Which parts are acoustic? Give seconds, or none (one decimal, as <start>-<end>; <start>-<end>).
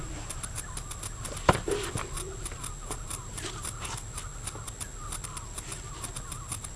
0.0-6.8